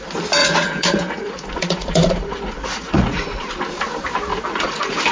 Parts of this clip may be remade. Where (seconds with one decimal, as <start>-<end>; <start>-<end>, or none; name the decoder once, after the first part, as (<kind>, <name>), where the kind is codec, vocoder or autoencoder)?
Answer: 0.4-3.5 (vocoder, Vocos); 4.3-5.1